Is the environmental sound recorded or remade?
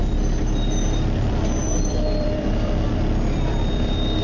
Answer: remade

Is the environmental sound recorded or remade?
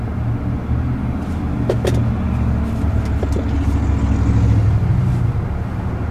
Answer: recorded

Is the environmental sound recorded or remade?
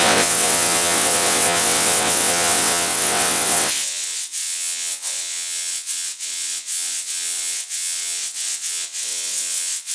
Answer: remade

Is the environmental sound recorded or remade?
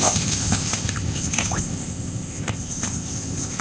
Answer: remade